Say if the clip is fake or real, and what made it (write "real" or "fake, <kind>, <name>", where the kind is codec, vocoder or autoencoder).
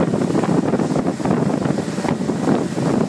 real